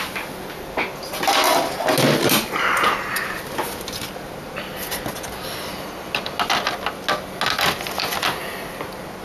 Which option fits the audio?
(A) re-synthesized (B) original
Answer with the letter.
B